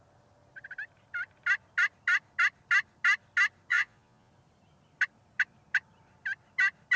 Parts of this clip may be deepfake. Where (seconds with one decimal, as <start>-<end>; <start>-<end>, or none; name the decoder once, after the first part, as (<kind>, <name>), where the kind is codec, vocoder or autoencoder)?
3.7-4.3 (vocoder, Vocos)